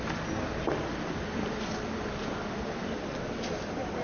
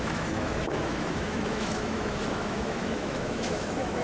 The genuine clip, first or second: first